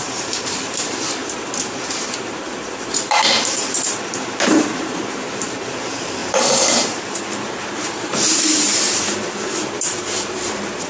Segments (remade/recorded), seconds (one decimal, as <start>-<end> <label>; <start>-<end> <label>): 0.0-10.9 remade